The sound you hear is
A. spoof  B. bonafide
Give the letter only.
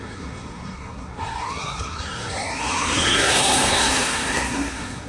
A